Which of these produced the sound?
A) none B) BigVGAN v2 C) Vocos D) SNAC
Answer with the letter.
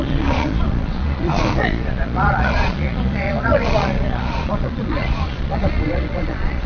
C